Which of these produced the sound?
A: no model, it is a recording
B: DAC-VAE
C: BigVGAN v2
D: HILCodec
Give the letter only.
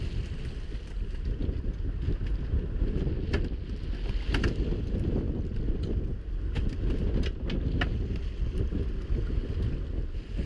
A